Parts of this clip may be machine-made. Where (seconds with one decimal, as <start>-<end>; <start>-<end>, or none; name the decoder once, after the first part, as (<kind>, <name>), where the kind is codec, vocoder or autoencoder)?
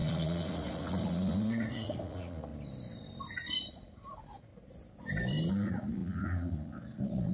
0.0-2.5 (vocoder, Vocos); 3.7-4.5; 5.5-7.3